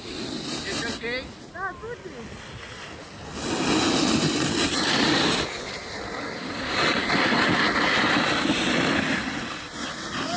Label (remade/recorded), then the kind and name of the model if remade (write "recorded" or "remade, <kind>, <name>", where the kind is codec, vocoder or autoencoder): recorded